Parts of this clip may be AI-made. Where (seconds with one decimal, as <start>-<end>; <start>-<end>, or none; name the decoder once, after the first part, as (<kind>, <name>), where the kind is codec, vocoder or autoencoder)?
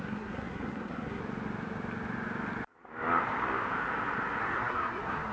0.0-1.2 (codec, SNAC); 4.4-5.3